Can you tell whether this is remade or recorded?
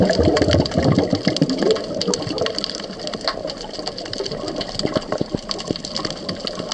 recorded